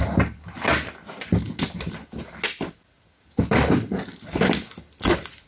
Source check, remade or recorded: recorded